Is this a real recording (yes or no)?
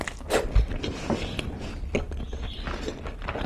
yes